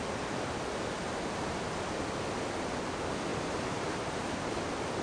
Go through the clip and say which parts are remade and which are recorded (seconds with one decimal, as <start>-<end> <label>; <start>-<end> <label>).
0.0-3.3 recorded; 3.3-4.6 remade; 4.6-5.0 recorded

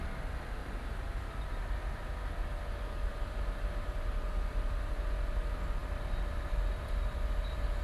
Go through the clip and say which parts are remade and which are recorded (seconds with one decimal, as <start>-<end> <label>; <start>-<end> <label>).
0.0-0.6 recorded; 0.6-2.1 remade; 2.1-3.1 recorded; 3.1-3.9 remade; 3.9-7.8 recorded